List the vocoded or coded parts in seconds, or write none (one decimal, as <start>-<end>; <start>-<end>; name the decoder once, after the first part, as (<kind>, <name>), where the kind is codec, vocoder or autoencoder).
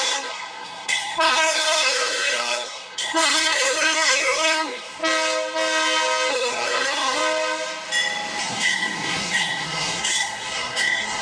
0.0-5.0 (codec, SNAC); 6.3-7.2; 8.4-11.2